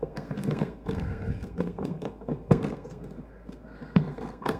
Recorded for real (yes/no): no